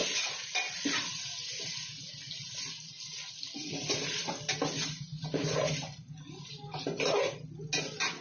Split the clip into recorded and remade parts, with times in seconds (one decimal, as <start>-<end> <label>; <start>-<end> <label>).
0.0-8.2 recorded